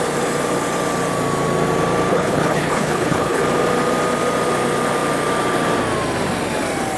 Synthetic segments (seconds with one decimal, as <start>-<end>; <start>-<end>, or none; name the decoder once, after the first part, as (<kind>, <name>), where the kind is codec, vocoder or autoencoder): 2.1-3.4 (codec, HILCodec)